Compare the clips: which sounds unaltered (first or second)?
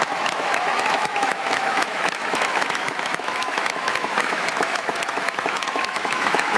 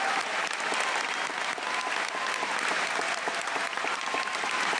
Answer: second